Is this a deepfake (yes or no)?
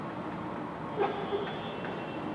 no